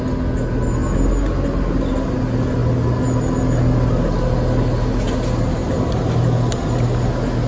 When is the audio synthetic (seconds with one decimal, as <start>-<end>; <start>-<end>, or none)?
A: none